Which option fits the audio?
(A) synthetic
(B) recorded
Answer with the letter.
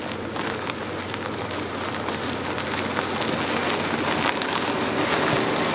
B